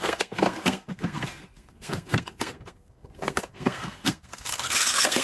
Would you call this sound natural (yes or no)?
no